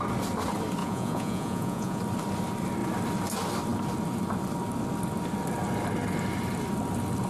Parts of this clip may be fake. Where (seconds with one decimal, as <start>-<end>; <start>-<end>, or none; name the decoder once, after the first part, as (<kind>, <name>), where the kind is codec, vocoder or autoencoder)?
0.8-2.0 (vocoder, Vocos)